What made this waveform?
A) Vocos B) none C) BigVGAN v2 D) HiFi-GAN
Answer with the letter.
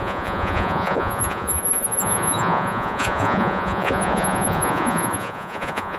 A